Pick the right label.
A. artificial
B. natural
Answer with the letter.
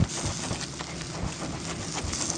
B